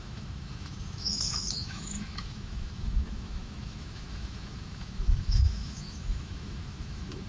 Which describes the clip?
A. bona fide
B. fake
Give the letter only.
B